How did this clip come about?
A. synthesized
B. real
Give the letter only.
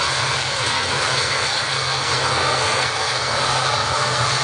A